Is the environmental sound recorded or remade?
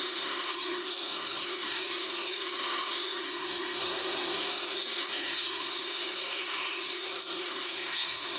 remade